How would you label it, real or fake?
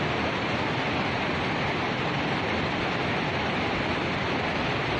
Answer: fake